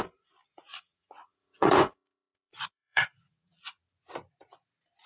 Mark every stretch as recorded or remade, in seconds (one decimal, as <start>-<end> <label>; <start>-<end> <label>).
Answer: 0.0-0.7 recorded; 0.7-3.8 remade; 3.8-5.1 recorded